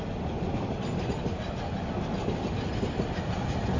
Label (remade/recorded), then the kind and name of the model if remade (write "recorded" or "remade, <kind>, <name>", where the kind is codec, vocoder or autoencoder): recorded